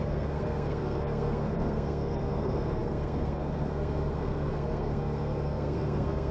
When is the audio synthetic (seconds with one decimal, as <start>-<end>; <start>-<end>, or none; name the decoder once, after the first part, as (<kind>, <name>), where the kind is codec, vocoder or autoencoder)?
0.0-6.3 (codec, SNAC)